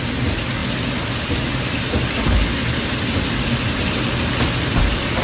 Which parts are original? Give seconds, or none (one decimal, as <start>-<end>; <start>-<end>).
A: 0.0-5.2

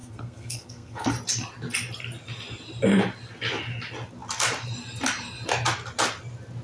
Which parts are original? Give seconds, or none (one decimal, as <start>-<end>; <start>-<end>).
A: 1.1-6.6

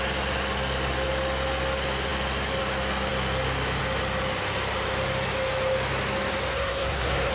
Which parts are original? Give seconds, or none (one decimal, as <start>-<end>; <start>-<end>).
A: 0.0-6.5

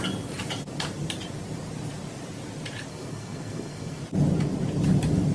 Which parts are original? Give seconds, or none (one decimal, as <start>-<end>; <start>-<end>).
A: 0.0-2.9; 4.0-5.3